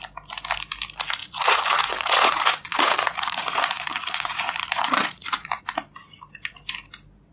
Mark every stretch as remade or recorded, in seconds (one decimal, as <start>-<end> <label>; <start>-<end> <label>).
0.0-1.2 recorded; 1.2-5.6 remade; 5.6-7.3 recorded